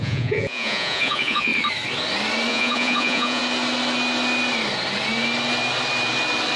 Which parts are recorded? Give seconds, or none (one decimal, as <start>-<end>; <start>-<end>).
1.5-2.5; 3.4-6.6